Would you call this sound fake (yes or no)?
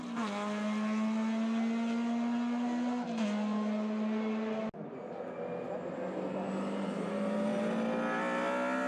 no